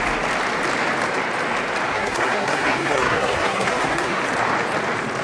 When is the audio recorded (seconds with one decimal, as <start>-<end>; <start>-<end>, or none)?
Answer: 0.0-1.9; 4.2-5.2